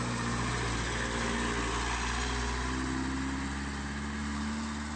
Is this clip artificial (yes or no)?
no